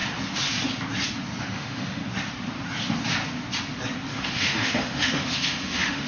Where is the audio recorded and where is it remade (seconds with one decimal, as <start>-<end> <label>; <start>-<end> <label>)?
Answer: 0.0-1.4 recorded; 1.4-2.0 remade; 2.0-4.1 recorded; 4.1-6.1 remade